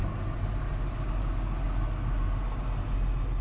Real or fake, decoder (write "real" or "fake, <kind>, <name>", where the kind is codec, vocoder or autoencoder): real